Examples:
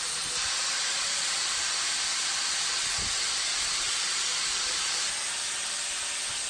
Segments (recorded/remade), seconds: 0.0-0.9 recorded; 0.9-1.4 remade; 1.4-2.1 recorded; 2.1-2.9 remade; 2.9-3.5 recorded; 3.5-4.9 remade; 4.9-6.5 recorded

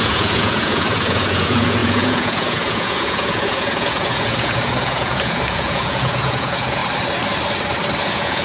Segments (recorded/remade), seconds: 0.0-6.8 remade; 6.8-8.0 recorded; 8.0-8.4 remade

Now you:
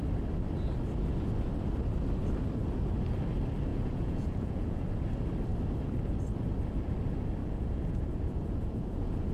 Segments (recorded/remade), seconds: 0.0-3.7 recorded; 3.7-4.8 remade; 4.8-7.4 recorded; 7.4-9.3 remade

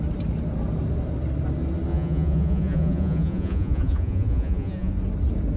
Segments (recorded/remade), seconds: 0.0-1.9 recorded; 1.9-4.9 remade; 4.9-5.6 recorded